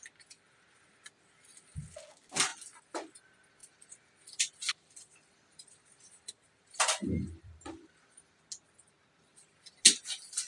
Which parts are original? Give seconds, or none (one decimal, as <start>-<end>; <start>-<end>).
0.0-3.6; 8.4-10.5